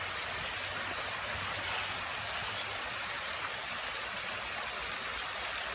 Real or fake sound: real